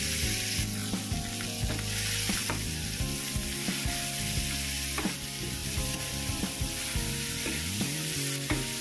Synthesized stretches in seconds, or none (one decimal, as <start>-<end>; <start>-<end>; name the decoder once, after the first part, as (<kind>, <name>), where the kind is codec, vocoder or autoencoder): 2.4-3.7 (vocoder, BigVGAN v2); 5.6-6.4